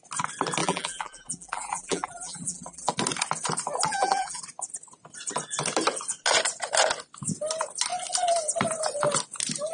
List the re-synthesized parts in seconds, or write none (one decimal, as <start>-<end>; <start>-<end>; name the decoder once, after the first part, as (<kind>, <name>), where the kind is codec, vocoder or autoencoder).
0.6-2.9 (vocoder, BigVGAN v2); 3.9-4.4